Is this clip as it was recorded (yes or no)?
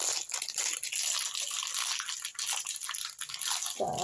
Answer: yes